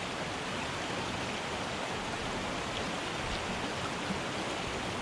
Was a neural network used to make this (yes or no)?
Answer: no